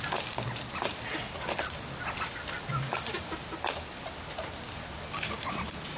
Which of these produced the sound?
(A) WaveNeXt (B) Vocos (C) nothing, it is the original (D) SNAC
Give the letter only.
C